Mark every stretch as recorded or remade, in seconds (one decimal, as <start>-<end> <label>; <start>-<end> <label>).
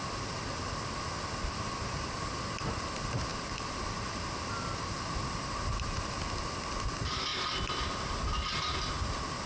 0.0-3.3 recorded; 3.3-5.0 remade; 5.0-9.5 recorded